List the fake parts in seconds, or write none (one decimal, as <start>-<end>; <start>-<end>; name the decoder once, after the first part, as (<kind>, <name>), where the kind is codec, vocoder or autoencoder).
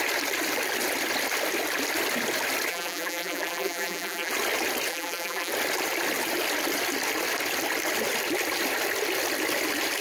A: 2.7-4.3 (vocoder, BigVGAN v2); 4.9-5.5